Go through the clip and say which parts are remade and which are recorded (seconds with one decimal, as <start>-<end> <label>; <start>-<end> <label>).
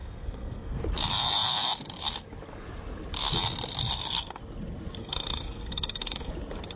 0.0-0.8 remade; 0.8-3.8 recorded; 3.8-4.4 remade; 4.4-5.0 recorded; 5.0-6.3 remade; 6.3-6.8 recorded